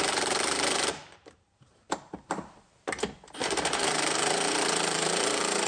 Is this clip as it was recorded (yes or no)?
no